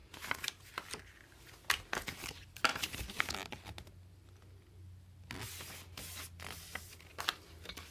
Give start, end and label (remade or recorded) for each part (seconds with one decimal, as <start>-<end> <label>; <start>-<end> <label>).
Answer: 0.0-0.7 remade; 0.7-7.9 recorded